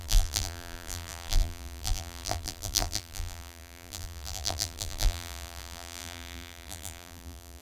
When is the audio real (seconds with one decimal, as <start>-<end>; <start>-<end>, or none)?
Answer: none